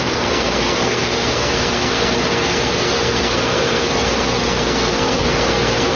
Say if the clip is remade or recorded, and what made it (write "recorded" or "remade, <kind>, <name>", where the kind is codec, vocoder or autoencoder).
remade, codec, SNAC